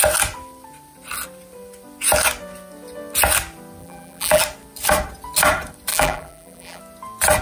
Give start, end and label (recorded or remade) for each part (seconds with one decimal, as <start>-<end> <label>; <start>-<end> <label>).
0.0-3.8 recorded; 3.8-4.4 remade; 4.4-5.9 recorded; 5.9-6.8 remade; 6.8-7.4 recorded